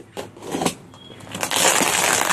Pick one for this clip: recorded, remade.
recorded